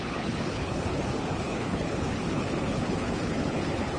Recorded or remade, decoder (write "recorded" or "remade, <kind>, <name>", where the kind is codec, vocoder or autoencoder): remade, codec, HILCodec